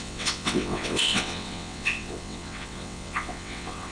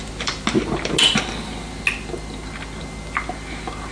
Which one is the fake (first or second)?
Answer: first